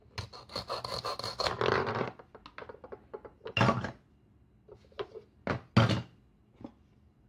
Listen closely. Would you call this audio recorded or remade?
recorded